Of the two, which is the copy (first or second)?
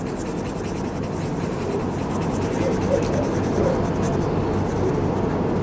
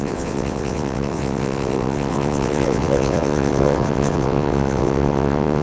second